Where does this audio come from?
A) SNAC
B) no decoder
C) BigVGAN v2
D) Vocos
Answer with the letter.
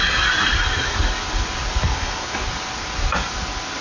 B